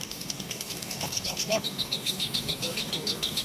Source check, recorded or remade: remade